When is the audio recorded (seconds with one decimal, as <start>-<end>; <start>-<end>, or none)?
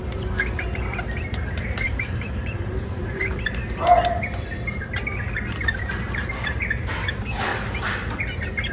3.6-5.5; 7.5-8.7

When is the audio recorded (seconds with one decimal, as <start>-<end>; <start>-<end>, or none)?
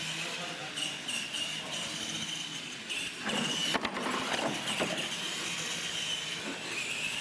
0.0-3.6; 4.1-7.2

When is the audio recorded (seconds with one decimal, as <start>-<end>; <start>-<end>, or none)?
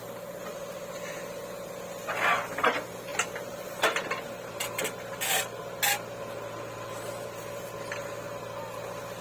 0.0-9.2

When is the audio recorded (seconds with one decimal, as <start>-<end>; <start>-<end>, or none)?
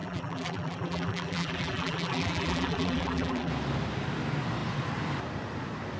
3.5-6.0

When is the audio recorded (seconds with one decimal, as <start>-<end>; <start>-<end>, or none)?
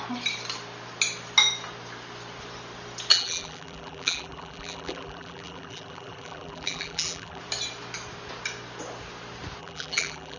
0.0-3.1; 7.4-9.6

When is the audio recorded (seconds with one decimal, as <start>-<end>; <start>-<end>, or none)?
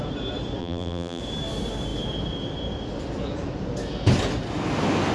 0.0-0.6; 1.2-5.1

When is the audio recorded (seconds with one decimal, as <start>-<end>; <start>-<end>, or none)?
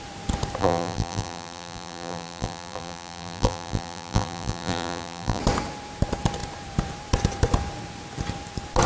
0.0-0.6; 5.4-8.9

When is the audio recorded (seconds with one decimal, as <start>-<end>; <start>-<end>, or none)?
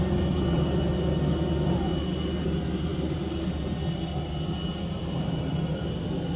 0.0-6.4